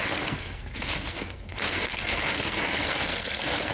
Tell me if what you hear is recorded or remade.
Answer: remade